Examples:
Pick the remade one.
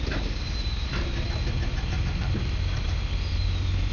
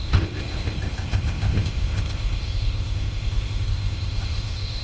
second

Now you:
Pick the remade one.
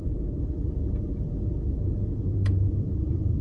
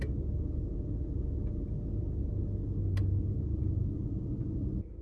first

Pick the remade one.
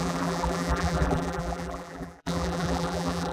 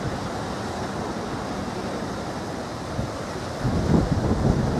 first